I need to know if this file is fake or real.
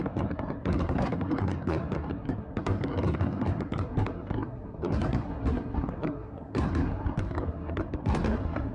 fake